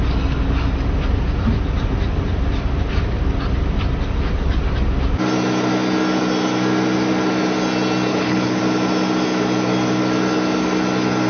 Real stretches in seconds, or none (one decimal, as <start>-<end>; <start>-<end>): 0.0-8.1; 8.6-11.3